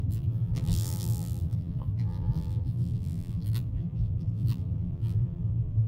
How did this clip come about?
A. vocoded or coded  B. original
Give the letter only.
A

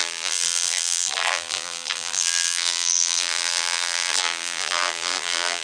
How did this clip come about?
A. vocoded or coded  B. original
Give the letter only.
A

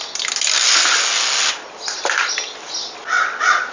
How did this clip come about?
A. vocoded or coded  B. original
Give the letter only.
B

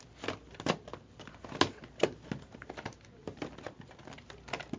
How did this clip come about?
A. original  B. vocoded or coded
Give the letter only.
A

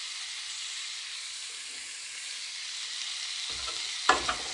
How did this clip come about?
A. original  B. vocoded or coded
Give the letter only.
A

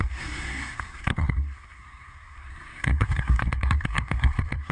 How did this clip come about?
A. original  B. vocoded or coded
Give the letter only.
B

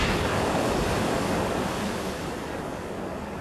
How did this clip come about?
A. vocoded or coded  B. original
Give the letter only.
A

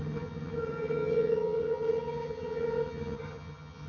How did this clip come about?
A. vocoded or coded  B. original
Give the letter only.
A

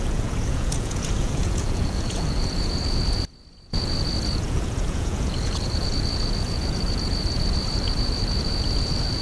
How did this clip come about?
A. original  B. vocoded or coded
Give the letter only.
B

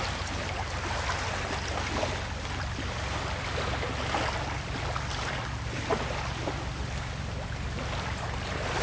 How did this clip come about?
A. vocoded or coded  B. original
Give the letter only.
B